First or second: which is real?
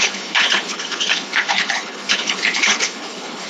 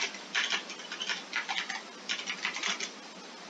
second